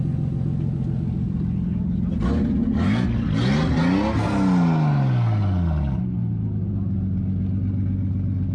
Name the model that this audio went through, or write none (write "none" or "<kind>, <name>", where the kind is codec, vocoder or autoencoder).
none